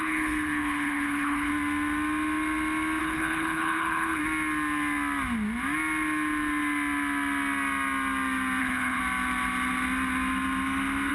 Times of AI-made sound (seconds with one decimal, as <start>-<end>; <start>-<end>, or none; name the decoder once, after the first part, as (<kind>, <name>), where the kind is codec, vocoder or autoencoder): 0.0-1.5 (codec, HILCodec); 3.0-4.2; 8.6-9.0